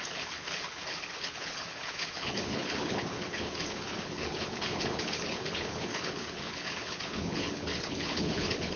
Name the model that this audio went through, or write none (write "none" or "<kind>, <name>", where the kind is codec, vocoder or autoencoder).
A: codec, HILCodec